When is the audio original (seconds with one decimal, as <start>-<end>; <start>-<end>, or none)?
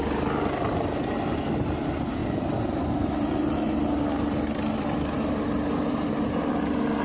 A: 0.0-7.0